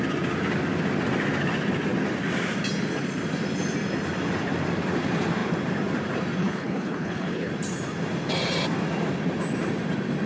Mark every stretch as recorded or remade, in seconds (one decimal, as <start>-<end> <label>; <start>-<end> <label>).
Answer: 0.0-6.4 recorded; 6.4-7.5 remade; 7.5-10.3 recorded